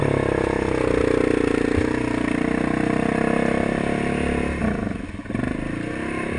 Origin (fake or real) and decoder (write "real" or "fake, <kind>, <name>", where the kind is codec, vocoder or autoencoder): real